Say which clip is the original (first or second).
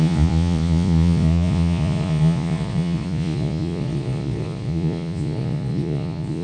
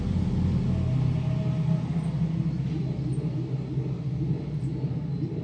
second